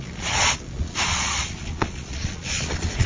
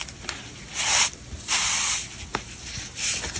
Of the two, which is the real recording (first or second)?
second